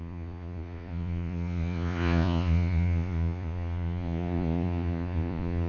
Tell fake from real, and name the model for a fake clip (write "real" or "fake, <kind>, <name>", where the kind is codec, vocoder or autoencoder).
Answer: fake, vocoder, Vocos